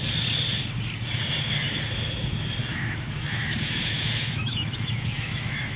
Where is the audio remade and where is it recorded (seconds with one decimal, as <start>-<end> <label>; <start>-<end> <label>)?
0.0-2.6 recorded; 2.6-5.8 remade